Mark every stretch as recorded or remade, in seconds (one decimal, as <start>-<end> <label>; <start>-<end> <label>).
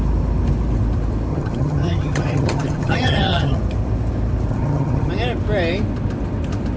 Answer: 0.0-1.3 recorded; 1.3-3.6 remade; 3.6-4.5 recorded; 4.5-5.1 remade; 5.1-6.8 recorded